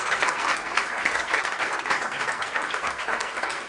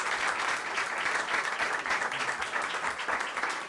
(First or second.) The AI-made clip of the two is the first